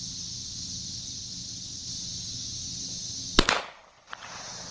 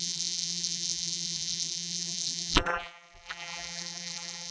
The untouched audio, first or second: first